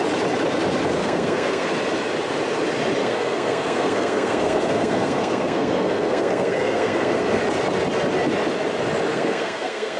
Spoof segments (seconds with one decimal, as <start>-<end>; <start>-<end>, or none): 1.0-1.7; 3.0-7.4; 9.1-10.0